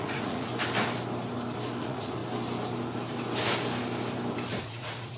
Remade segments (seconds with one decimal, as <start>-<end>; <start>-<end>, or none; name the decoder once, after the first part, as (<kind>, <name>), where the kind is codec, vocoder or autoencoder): 0.0-0.5 (vocoder, Vocos); 1.8-2.2; 4.6-5.2